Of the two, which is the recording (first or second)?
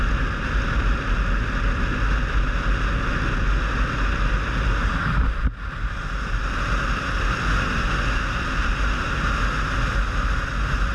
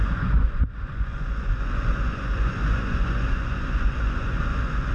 first